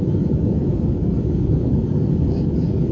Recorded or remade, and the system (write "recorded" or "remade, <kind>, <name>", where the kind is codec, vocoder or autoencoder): remade, codec, DAC